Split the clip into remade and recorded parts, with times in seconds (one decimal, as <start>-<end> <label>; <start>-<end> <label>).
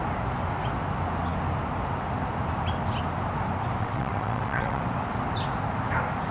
0.0-3.8 recorded; 3.8-4.8 remade; 4.8-6.3 recorded